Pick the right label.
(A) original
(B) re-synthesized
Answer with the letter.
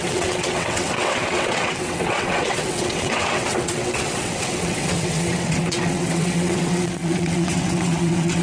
B